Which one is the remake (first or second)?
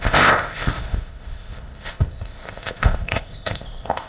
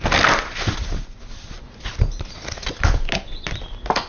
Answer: first